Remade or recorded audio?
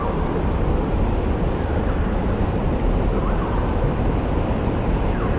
recorded